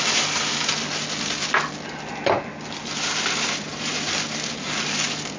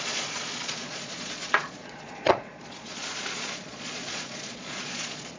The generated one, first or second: second